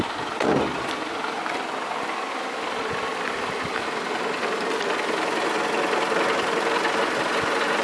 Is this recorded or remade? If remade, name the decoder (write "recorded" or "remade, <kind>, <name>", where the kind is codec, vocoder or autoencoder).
recorded